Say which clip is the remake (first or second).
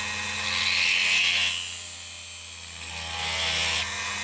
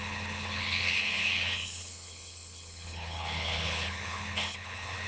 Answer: second